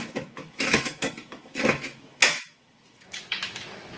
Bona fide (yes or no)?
no